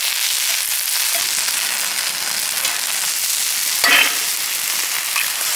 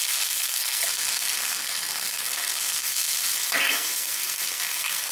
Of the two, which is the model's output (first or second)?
second